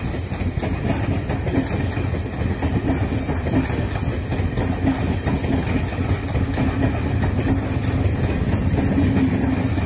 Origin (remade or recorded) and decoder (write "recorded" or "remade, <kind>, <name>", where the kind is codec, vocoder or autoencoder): recorded